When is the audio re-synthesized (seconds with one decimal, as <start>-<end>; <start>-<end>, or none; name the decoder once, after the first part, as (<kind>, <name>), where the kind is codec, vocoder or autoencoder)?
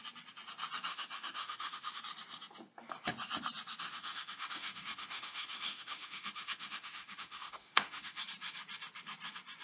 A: 0.9-2.0 (autoencoder, DAC-VAE); 3.8-8.2